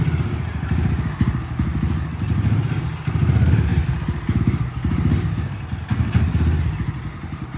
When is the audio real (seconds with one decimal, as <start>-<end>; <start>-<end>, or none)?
0.0-7.6